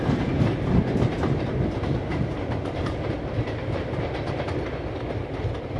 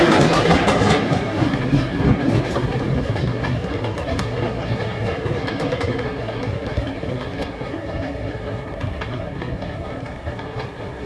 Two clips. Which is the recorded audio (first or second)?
first